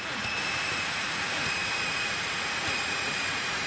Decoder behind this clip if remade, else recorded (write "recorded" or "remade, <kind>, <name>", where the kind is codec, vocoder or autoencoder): remade, vocoder, Vocos